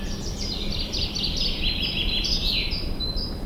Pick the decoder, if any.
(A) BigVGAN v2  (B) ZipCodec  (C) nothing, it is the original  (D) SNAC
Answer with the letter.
C